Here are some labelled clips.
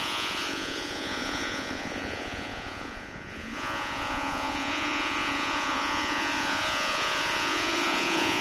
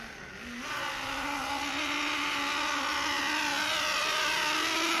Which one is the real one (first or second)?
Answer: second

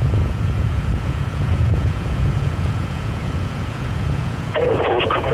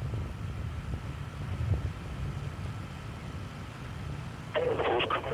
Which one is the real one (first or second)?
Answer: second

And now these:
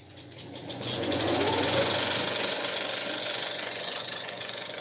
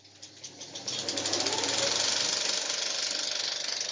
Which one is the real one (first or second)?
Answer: second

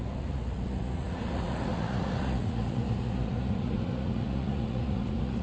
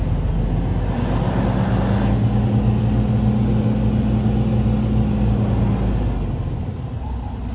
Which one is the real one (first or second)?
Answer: second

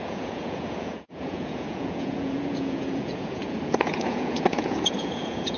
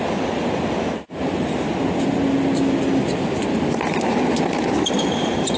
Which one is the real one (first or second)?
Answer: second